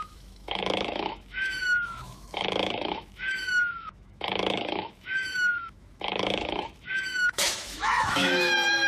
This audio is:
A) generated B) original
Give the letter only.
A